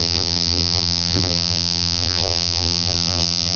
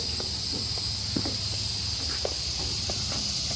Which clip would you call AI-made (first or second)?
first